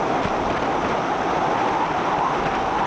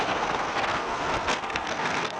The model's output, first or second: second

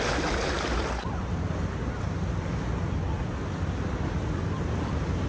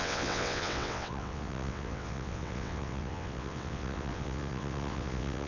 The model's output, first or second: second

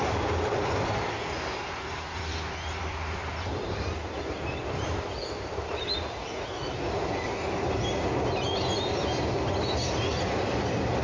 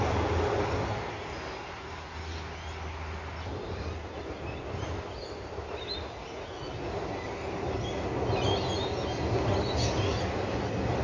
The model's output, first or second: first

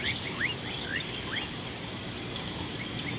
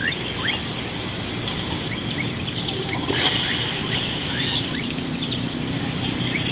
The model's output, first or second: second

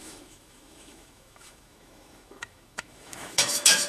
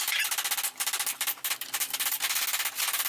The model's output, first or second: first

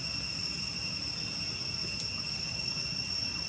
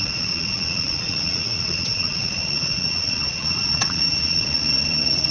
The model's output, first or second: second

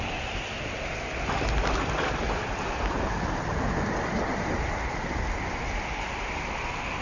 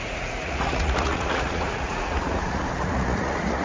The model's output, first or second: second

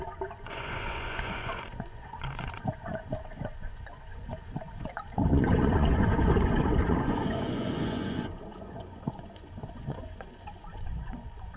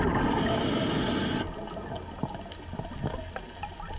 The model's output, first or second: first